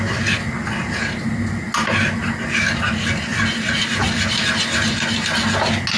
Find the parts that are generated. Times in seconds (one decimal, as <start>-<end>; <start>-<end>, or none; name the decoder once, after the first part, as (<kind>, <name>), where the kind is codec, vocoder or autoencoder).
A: none